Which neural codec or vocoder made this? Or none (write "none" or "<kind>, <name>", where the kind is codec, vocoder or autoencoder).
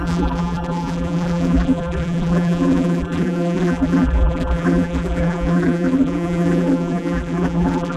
vocoder, BigVGAN v2